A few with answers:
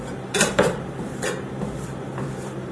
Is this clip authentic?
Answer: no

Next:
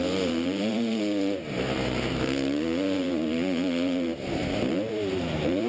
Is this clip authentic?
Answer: no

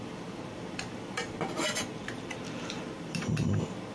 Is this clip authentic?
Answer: no